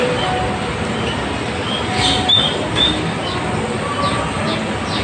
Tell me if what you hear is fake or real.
real